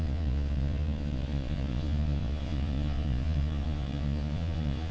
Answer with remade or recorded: remade